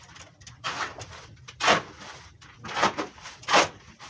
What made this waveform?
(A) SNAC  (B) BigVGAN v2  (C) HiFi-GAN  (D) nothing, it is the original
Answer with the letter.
D